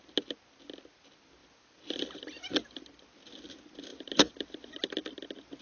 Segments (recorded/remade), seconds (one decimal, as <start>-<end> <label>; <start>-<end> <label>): 0.0-1.4 recorded; 1.4-2.9 remade; 2.9-3.9 recorded; 3.9-4.9 remade; 4.9-5.6 recorded